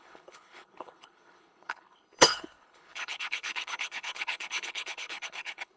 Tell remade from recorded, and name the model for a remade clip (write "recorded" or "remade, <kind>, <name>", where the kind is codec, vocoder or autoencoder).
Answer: remade, codec, HILCodec